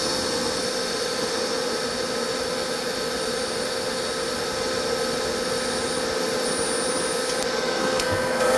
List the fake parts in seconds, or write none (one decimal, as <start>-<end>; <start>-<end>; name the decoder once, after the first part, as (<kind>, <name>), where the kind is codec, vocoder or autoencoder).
7.8-8.6 (codec, SNAC)

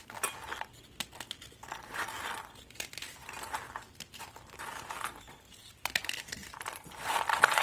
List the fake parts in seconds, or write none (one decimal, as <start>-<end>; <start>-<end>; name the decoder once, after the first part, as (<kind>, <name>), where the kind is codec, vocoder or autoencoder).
6.4-7.0 (vocoder, BigVGAN v2)

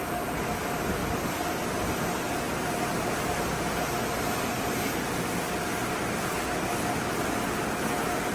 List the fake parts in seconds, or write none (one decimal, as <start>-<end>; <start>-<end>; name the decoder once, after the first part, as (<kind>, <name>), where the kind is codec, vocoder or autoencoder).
none

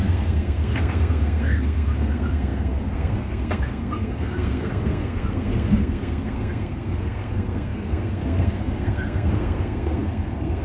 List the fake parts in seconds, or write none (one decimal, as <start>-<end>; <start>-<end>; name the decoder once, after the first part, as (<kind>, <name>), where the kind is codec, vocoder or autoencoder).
0.0-10.6 (codec, SNAC)

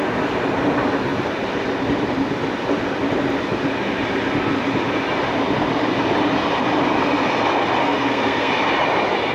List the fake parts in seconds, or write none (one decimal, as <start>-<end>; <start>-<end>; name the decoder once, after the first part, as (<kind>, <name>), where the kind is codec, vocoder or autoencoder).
7.8-8.5 (codec, SNAC)